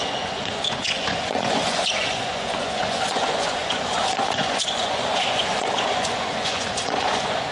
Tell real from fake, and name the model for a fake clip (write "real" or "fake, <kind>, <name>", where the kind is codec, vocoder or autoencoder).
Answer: fake, vocoder, Vocos